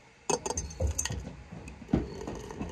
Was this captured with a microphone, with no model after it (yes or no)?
yes